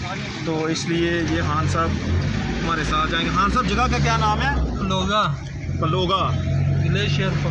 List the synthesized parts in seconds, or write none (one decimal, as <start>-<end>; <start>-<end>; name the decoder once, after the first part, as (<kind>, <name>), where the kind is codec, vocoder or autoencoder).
none